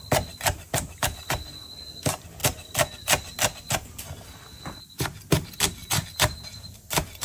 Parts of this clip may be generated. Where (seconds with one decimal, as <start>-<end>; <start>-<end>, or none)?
5.8-6.8